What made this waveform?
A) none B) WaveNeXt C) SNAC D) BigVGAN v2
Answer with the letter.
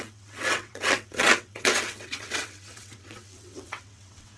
B